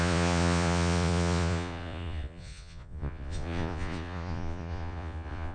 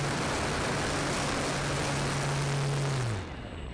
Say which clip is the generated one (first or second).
first